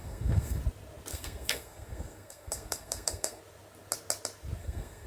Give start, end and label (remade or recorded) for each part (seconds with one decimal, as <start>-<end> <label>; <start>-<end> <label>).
0.0-0.6 remade; 0.6-1.1 recorded; 1.1-3.4 remade; 3.4-4.6 recorded; 4.6-5.1 remade

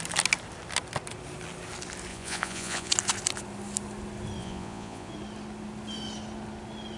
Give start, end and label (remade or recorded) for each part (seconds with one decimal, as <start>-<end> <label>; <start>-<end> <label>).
0.0-2.1 recorded; 2.1-2.9 remade; 2.9-4.4 recorded; 4.4-5.1 remade; 5.1-7.0 recorded

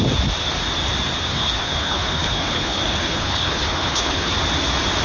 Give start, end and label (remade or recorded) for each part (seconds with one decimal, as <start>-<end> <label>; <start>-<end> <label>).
0.0-1.3 recorded; 1.3-4.3 remade; 4.3-5.0 recorded

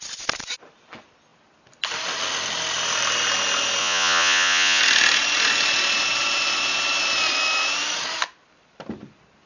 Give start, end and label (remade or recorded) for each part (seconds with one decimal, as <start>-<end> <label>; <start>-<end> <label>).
0.0-3.8 recorded; 3.8-4.8 remade; 4.8-9.5 recorded